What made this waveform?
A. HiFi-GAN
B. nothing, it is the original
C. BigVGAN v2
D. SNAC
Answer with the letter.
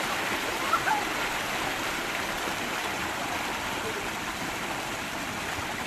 C